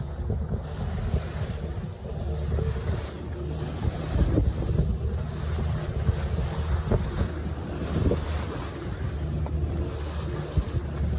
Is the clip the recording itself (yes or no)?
yes